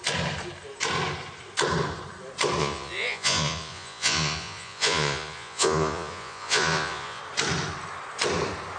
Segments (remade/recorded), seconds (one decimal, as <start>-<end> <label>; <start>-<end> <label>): 0.0-2.6 recorded; 2.6-7.2 remade; 7.2-8.8 recorded